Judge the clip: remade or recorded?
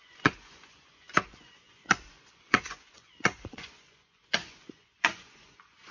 remade